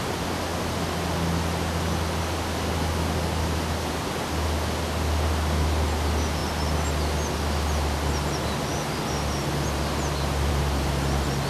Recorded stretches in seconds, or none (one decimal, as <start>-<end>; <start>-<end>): 0.0-11.5